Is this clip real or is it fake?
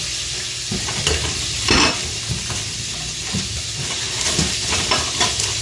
real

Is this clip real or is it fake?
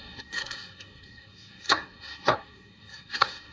fake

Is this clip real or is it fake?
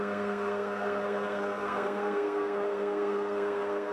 fake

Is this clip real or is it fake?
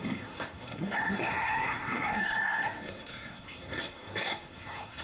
fake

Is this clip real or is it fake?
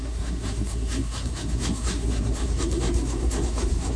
fake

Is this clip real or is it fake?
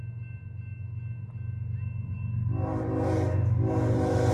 real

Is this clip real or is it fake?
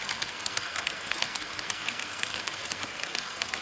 fake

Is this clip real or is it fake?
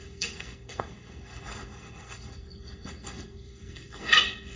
fake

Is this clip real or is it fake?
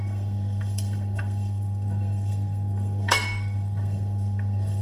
fake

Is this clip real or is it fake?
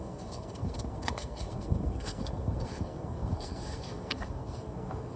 fake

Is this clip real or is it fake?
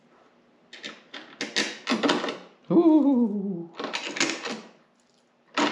real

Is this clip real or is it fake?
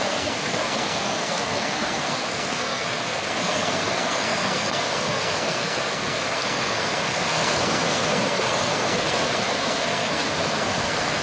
fake